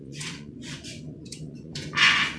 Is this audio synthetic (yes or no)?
yes